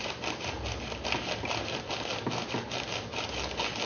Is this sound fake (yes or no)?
no